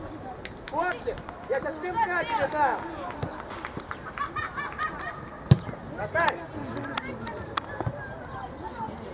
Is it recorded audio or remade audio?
recorded